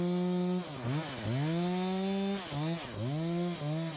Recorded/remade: recorded